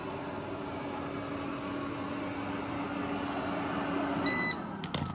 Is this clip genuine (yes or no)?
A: yes